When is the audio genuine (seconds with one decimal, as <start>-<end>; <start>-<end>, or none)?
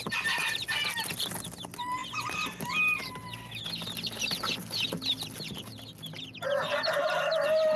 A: 0.0-7.8